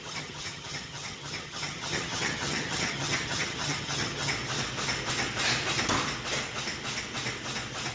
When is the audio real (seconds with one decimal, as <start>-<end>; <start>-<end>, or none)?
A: 4.3-7.9